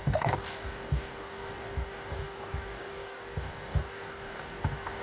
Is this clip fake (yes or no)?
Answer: yes